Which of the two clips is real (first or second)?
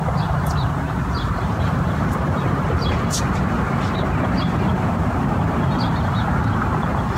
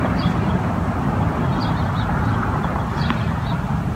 second